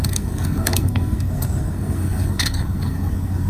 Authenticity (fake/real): fake